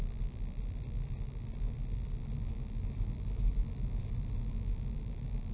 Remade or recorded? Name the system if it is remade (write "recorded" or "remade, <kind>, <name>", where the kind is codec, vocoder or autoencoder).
recorded